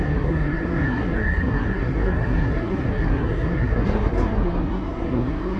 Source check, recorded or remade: remade